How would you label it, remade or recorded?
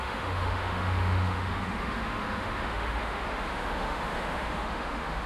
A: remade